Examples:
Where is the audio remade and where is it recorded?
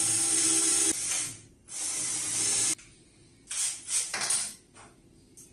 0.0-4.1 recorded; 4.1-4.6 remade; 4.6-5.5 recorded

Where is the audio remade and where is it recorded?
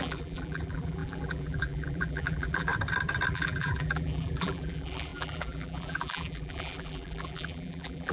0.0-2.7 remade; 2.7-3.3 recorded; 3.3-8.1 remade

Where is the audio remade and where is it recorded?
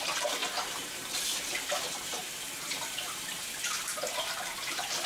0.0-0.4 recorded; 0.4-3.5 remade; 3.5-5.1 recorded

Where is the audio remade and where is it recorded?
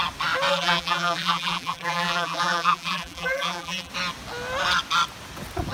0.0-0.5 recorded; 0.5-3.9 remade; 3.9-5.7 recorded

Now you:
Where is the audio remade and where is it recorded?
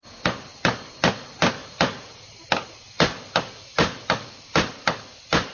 0.0-1.6 recorded; 1.6-2.7 remade; 2.7-5.5 recorded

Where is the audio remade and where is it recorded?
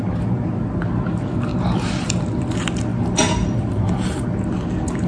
0.0-1.5 recorded; 1.5-2.1 remade; 2.1-2.9 recorded; 2.9-4.2 remade; 4.2-5.1 recorded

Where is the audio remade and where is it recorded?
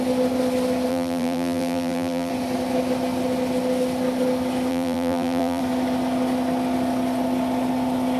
0.0-0.9 recorded; 0.9-2.3 remade; 2.3-4.7 recorded; 4.7-5.6 remade; 5.6-8.2 recorded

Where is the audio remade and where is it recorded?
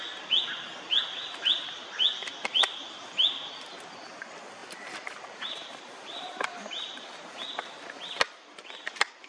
0.0-4.6 recorded; 4.6-7.3 remade; 7.3-9.3 recorded